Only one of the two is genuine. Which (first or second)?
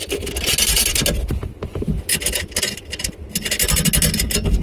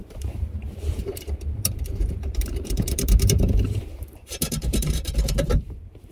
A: first